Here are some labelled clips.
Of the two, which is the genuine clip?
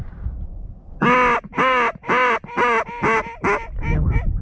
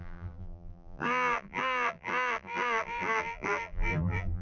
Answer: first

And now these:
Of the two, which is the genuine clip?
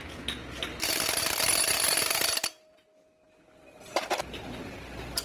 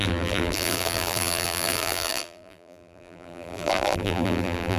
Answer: first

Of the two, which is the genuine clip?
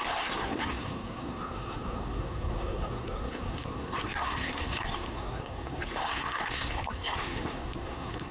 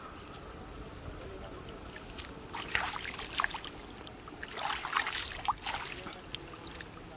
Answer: second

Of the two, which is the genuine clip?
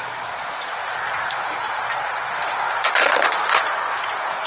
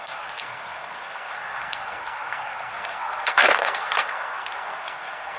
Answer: first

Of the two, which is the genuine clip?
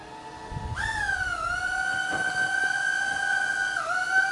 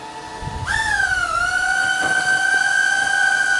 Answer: first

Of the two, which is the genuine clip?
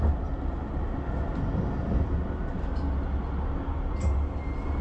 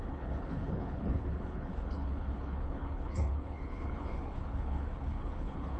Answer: first